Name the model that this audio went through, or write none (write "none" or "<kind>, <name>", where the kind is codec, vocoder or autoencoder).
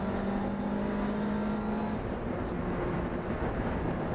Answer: none